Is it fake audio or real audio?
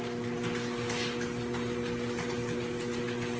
real